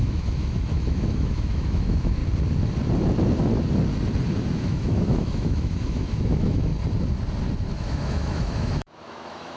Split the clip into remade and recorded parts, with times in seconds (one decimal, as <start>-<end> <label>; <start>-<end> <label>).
0.0-2.2 remade; 2.2-4.6 recorded; 4.6-6.7 remade; 6.7-7.7 recorded; 7.7-9.6 remade

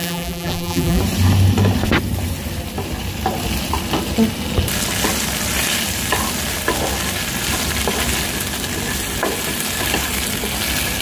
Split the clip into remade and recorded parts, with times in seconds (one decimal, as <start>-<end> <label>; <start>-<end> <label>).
0.0-1.0 remade; 1.0-11.0 recorded

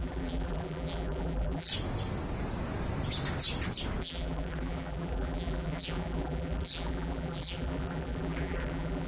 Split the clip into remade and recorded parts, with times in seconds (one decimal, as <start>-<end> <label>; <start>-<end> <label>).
0.0-1.7 remade; 1.7-4.0 recorded; 4.0-9.1 remade

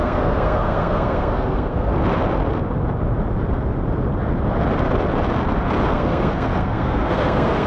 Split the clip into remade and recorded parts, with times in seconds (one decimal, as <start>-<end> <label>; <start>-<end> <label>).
0.0-1.9 remade; 1.9-5.9 recorded; 5.9-7.7 remade

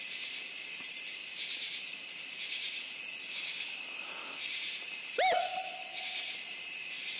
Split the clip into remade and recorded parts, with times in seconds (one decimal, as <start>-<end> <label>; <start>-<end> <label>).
0.0-1.2 remade; 1.2-4.4 recorded; 4.4-5.5 remade; 5.5-6.0 recorded; 6.0-7.2 remade